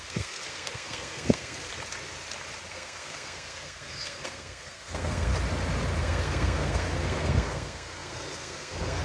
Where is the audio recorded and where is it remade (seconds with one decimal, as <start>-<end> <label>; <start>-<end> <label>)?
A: 0.0-1.7 remade; 1.7-2.7 recorded; 2.7-5.3 remade; 5.3-6.0 recorded; 6.0-9.0 remade